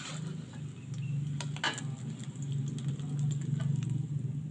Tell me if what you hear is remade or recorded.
recorded